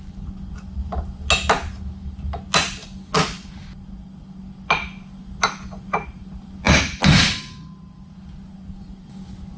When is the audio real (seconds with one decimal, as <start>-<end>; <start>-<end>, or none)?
0.0-9.6